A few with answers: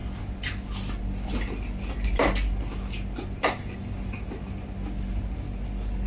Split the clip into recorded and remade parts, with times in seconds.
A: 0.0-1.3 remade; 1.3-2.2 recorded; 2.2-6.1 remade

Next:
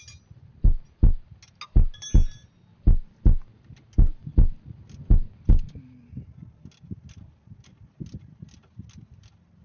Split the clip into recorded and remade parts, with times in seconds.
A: 0.0-9.6 recorded

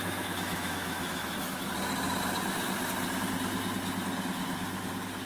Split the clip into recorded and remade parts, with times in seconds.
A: 0.0-1.7 remade; 1.7-5.3 recorded

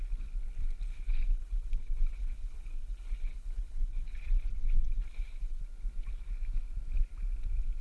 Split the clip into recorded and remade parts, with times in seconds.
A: 0.0-0.9 recorded; 0.9-5.6 remade; 5.6-7.8 recorded

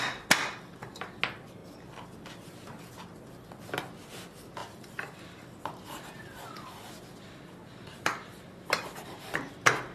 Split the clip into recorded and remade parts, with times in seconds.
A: 0.0-4.6 recorded; 4.6-9.5 remade; 9.5-9.9 recorded

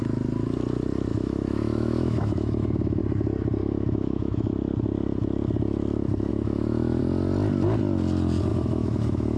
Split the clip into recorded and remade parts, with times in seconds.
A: 0.0-1.1 recorded; 1.1-3.0 remade; 3.0-3.6 recorded; 3.6-4.5 remade; 4.5-6.3 recorded; 6.3-7.0 remade; 7.0-8.5 recorded; 8.5-9.4 remade

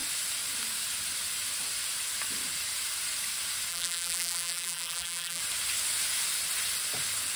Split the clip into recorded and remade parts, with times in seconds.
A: 0.0-3.7 recorded; 3.7-5.4 remade; 5.4-7.4 recorded

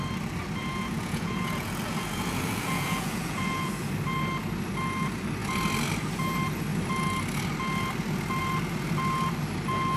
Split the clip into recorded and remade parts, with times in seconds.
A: 0.0-0.6 recorded; 0.6-3.9 remade; 3.9-10.0 recorded